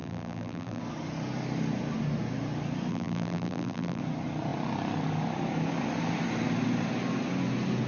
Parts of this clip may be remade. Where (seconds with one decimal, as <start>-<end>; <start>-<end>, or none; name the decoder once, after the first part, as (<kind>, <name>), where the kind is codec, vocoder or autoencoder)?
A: 0.0-0.8 (vocoder, BigVGAN v2); 2.9-4.0

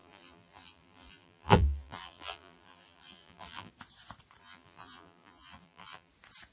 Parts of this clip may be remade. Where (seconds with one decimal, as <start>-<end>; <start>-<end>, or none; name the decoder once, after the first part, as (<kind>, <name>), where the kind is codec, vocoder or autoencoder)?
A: 0.0-3.7 (vocoder, BigVGAN v2); 4.4-6.1

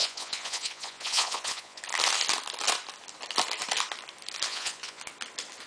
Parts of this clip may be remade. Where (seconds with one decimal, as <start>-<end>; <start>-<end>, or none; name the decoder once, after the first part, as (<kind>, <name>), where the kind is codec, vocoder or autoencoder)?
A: 0.0-1.8 (vocoder, Vocos); 4.5-5.0

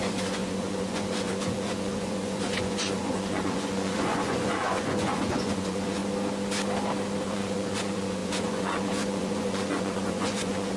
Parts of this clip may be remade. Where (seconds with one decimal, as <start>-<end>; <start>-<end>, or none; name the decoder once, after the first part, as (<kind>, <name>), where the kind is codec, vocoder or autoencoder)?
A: 0.0-6.0 (vocoder, Vocos); 7.2-10.8

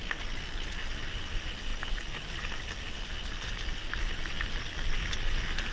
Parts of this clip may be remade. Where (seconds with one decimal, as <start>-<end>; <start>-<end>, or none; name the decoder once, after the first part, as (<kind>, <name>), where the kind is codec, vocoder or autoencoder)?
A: none